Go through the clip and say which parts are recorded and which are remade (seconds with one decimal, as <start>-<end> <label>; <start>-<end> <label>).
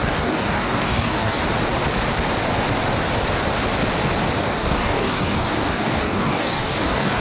0.0-1.4 remade; 1.4-4.4 recorded; 4.4-7.2 remade